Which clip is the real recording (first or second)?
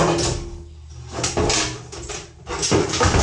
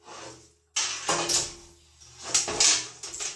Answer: second